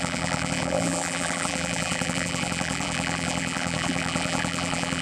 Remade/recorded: remade